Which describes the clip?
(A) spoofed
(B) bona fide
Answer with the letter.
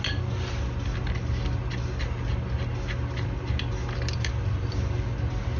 B